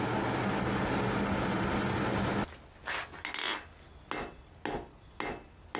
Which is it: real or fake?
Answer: real